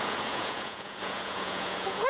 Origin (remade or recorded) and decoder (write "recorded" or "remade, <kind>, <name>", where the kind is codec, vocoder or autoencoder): remade, vocoder, Vocos